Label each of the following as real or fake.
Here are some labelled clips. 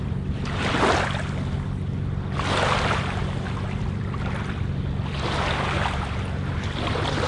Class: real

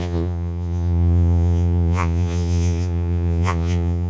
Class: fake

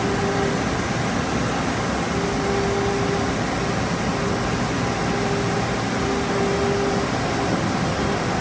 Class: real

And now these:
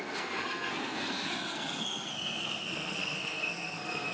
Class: fake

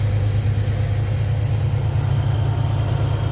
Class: real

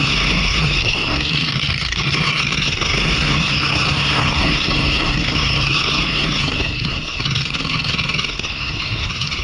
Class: fake